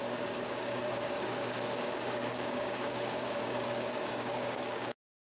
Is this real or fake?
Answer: fake